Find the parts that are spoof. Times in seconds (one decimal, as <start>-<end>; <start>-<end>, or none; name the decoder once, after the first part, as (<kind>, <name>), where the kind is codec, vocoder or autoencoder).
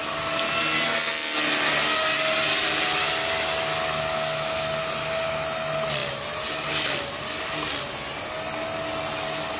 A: none